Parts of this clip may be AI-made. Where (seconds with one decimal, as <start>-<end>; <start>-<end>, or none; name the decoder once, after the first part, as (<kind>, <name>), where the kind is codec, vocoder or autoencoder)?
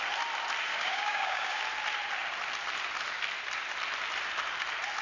0.7-1.6 (codec, DAC)